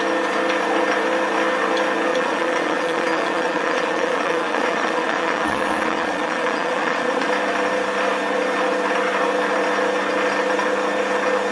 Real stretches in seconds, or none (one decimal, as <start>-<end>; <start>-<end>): 0.0-2.1; 7.3-11.5